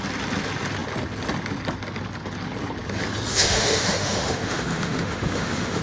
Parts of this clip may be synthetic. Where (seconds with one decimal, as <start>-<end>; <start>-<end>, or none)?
3.3-5.8